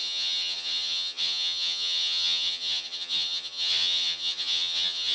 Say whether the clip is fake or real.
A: fake